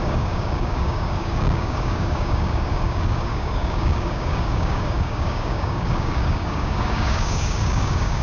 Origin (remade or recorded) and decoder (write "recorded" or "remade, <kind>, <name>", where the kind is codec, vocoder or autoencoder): remade, codec, DAC